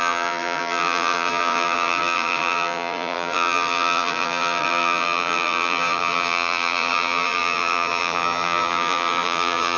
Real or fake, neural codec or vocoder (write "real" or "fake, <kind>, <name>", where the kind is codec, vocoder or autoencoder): fake, vocoder, BigVGAN v2